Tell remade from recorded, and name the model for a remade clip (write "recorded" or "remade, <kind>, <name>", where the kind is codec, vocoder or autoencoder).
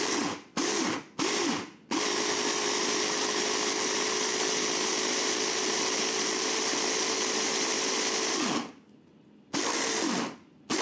recorded